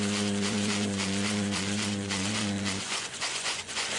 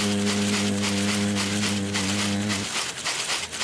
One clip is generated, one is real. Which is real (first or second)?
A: second